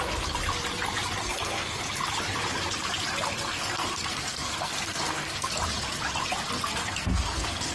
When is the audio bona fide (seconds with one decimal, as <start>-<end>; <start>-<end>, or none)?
0.0-1.2; 1.8-3.5; 5.5-6.8